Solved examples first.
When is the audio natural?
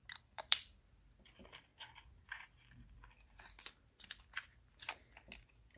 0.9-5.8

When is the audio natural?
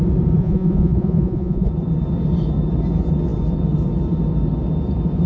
0.0-0.4; 1.7-5.3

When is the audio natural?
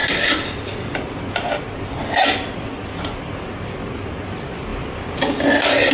0.0-5.9